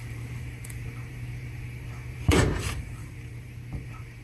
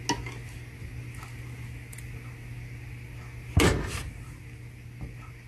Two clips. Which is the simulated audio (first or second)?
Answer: first